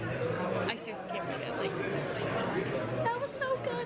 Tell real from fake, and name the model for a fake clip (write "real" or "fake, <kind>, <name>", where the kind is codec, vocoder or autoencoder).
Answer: real